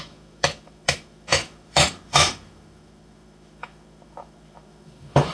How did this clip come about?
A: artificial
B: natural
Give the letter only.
A